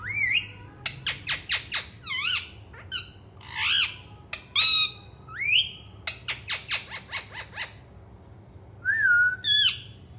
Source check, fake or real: real